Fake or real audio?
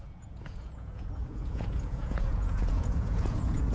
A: fake